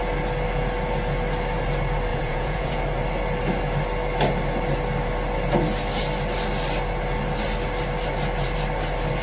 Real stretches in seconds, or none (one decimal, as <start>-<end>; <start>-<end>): 0.0-2.1; 2.8-9.2